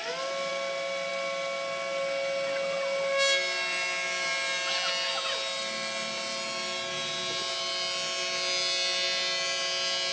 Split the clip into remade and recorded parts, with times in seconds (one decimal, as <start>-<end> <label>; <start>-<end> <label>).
0.0-10.1 recorded